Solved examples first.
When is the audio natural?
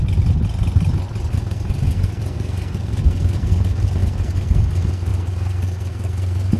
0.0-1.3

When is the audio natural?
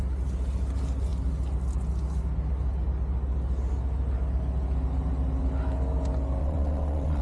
0.0-6.4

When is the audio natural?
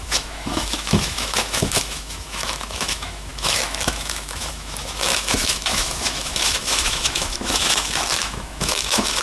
none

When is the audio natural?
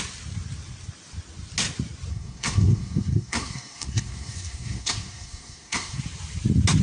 0.0-2.1; 6.0-6.8